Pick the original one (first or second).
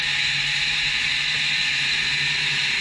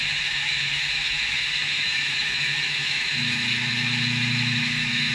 first